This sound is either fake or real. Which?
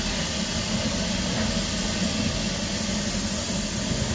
real